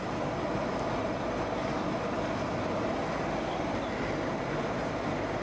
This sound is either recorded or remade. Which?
remade